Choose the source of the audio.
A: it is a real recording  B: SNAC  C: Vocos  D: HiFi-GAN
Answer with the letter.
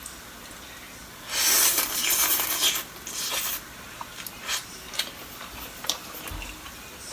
A